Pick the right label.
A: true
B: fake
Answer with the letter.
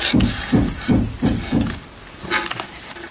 A